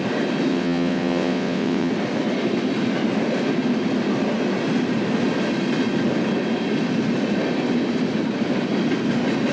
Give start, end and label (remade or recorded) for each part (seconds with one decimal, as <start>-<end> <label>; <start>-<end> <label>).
0.0-0.5 recorded; 0.5-1.9 remade; 1.9-9.5 recorded

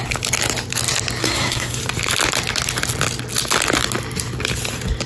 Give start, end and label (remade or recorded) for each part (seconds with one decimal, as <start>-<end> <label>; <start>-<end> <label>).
0.0-1.2 recorded; 1.2-1.8 remade; 1.8-5.1 recorded

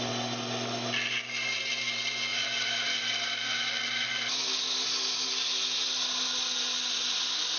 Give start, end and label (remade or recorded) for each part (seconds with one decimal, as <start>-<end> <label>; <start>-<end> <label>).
0.0-7.6 recorded

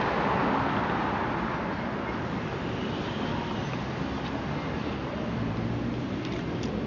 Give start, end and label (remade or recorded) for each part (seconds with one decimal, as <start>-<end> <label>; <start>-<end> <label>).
0.0-6.9 recorded

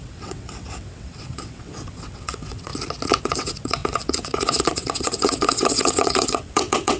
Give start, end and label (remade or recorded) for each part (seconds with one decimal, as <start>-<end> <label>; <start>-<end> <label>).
0.0-2.7 remade; 2.7-3.2 recorded; 3.2-7.0 remade

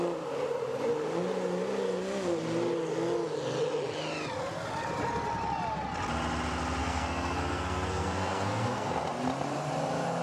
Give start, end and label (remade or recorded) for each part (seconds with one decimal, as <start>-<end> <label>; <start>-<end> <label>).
0.0-6.8 recorded; 6.8-8.9 remade; 8.9-10.2 recorded

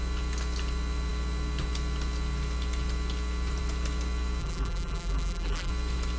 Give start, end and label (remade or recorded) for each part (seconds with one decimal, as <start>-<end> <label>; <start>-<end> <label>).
0.0-4.4 recorded; 4.4-5.7 remade; 5.7-6.2 recorded